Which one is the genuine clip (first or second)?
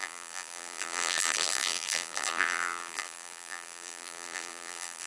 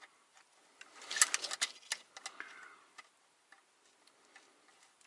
second